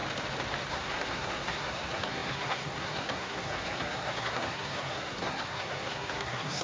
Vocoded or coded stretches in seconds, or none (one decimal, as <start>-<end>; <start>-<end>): 0.7-6.6